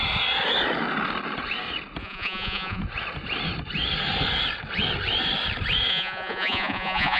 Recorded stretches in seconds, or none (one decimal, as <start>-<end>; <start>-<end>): 0.0-2.0; 2.8-5.9